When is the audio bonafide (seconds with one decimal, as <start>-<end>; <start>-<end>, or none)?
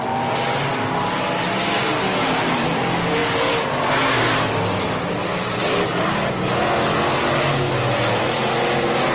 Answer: 0.0-9.1